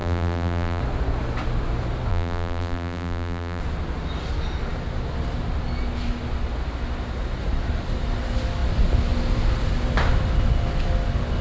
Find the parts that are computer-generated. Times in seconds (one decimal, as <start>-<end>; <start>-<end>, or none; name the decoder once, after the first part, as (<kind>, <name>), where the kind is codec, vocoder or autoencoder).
0.0-0.8 (vocoder, BigVGAN v2); 2.1-3.6